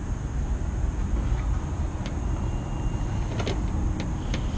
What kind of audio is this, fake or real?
real